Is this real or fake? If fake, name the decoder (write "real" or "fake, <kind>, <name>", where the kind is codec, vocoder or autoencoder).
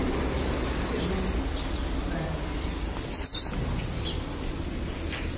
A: real